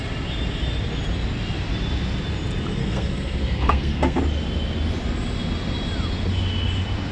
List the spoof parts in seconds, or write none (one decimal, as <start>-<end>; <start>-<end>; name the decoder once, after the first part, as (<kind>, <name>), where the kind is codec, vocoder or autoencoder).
2.8-4.2 (codec, SNAC)